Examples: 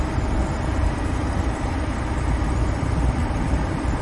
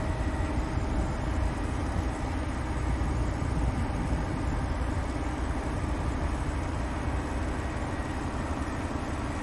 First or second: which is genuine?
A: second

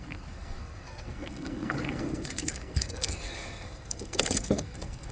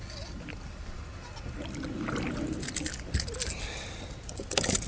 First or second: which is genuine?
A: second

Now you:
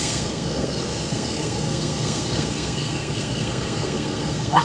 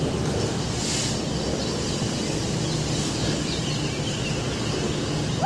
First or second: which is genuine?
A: second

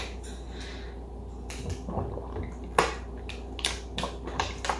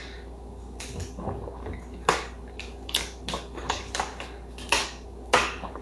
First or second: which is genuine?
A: first